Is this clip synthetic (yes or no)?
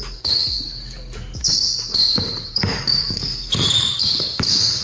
yes